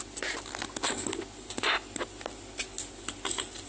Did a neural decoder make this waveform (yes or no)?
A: no